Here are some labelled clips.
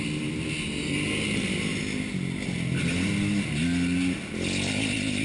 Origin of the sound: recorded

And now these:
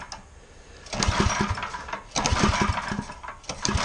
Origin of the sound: recorded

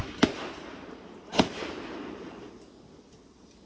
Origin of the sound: recorded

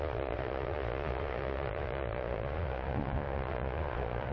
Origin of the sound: remade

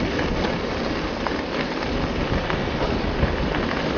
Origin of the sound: recorded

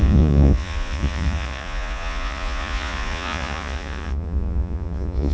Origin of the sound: remade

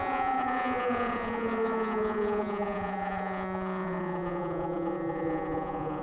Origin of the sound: remade